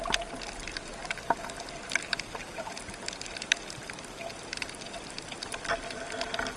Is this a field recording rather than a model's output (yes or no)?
yes